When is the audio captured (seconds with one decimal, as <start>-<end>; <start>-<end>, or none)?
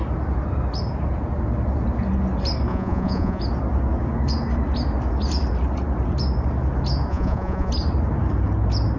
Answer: 0.0-2.7; 3.4-7.1; 7.7-9.0